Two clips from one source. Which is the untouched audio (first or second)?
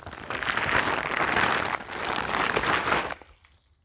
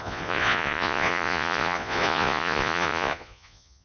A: first